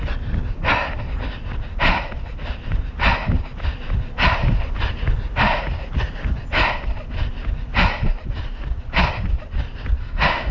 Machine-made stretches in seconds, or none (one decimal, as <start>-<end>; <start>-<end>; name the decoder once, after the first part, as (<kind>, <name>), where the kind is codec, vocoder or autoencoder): 10.0-10.5 (autoencoder, DAC-VAE)